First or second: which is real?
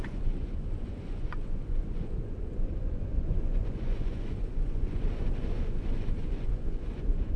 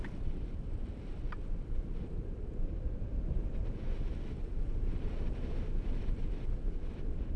second